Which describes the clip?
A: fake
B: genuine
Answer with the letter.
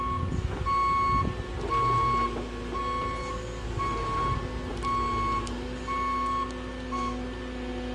B